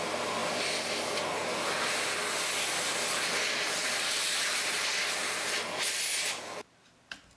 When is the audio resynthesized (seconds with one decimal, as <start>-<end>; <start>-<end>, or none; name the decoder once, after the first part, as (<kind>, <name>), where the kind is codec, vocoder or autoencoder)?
3.8-4.9 (vocoder, BigVGAN v2)